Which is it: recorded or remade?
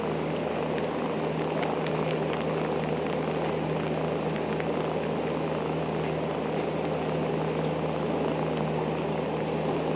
recorded